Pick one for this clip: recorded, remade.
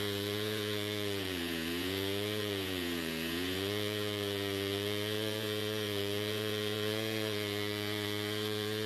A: remade